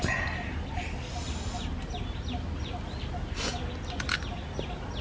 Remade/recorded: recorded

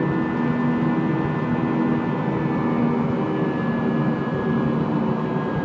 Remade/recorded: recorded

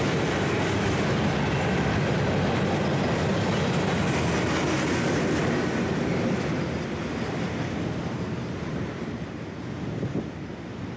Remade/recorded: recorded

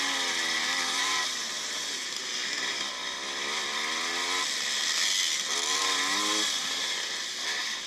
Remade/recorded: recorded